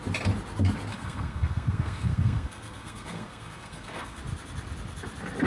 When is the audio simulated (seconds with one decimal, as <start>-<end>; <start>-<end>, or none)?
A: 0.9-4.2